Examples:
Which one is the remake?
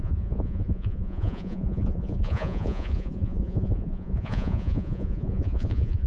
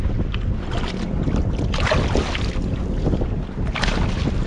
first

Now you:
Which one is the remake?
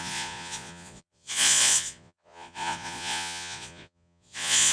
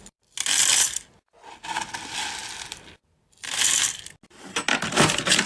first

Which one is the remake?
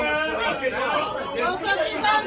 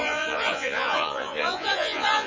second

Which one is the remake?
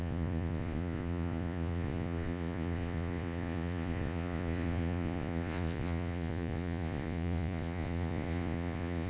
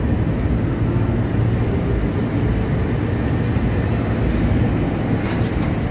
first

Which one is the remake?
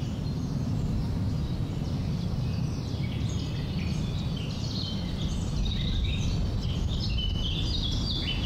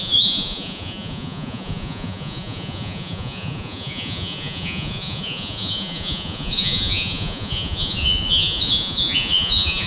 second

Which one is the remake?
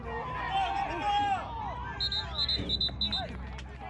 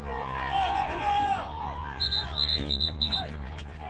second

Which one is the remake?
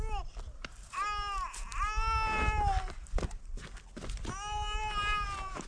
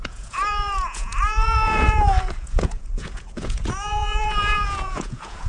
second